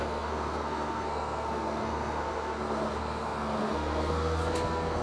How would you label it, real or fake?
fake